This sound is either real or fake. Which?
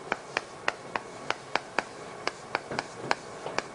real